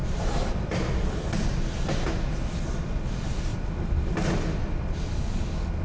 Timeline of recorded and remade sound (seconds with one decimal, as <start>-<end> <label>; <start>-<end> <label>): 0.0-0.8 remade; 0.8-3.5 recorded; 3.5-4.3 remade; 4.3-5.8 recorded